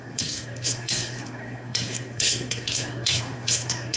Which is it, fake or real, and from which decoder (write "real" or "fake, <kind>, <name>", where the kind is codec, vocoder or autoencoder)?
fake, codec, SNAC